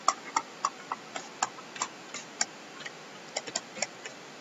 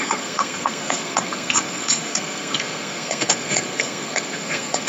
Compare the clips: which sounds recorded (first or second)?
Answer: first